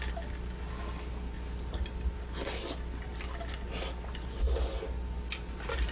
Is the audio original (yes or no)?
yes